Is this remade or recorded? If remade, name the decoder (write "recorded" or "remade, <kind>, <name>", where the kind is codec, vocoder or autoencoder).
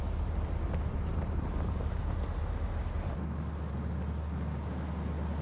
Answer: recorded